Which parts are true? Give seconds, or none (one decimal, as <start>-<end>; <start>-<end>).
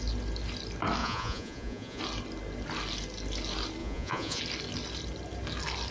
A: 0.0-1.0; 2.0-3.8; 4.4-5.9